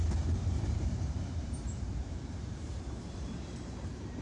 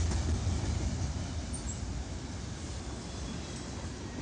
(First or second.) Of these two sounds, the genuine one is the second